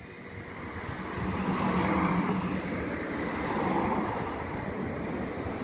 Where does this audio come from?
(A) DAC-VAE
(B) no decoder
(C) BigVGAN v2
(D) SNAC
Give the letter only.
B